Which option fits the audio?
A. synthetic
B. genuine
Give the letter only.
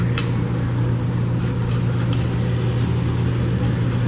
B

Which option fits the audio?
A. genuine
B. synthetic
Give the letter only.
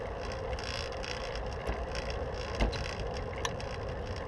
A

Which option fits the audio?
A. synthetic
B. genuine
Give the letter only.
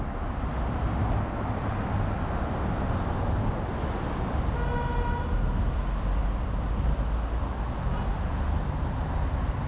B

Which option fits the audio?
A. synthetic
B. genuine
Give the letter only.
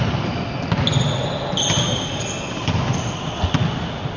B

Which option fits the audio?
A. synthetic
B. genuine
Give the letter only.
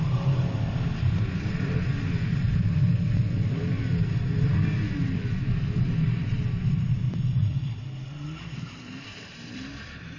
A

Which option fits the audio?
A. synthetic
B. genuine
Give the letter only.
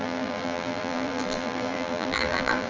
A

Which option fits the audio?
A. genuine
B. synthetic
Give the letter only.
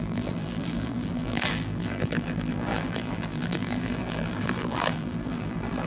B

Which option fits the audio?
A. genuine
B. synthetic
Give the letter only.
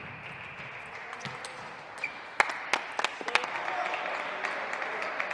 A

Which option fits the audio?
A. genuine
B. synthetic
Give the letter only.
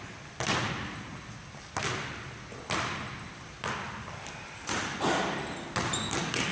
A